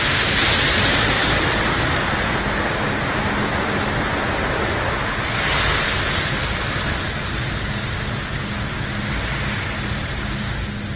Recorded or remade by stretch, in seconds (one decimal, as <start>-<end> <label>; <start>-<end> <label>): 0.0-11.0 recorded